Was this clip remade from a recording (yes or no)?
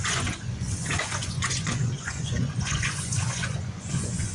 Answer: yes